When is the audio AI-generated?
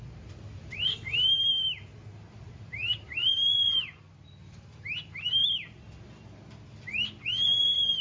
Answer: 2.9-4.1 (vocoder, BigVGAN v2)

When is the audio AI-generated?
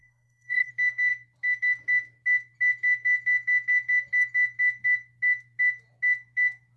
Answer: 0.0-0.7 (codec, SNAC)